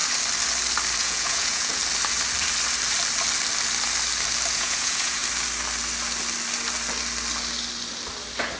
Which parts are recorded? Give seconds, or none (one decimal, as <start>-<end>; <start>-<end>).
0.0-1.0; 1.8-4.5; 5.2-8.6